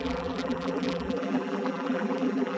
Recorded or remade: remade